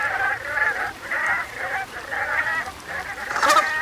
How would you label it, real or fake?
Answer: real